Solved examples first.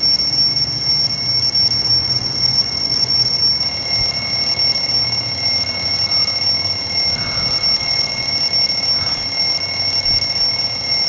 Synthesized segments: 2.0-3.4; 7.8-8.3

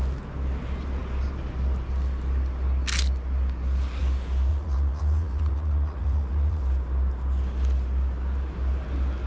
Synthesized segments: 4.5-6.6